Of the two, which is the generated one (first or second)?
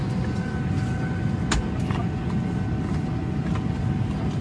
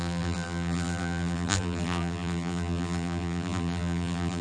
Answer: second